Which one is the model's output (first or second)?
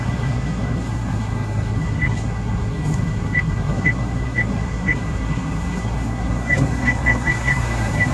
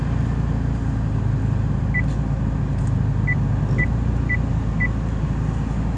first